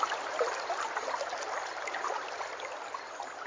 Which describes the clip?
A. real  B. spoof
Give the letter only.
A